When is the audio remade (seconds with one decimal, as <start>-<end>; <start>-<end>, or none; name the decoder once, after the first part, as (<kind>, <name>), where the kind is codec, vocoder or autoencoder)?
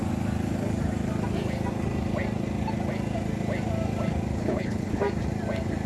4.3-5.0 (codec, HILCodec)